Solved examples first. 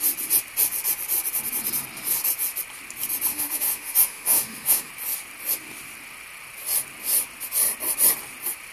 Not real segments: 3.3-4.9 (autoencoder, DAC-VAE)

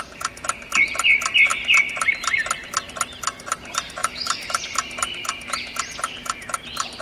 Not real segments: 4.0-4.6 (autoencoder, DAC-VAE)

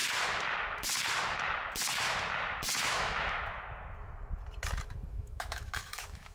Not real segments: 2.8-3.4 (autoencoder, DAC-VAE); 5.1-6.3